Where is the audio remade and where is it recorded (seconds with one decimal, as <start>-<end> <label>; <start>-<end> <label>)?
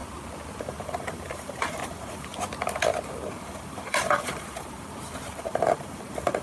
0.0-0.6 recorded; 0.6-2.3 remade; 2.3-3.4 recorded; 3.4-6.4 remade